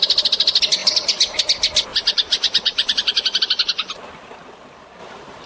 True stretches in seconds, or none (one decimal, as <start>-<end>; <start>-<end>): 0.0-1.9; 3.4-5.0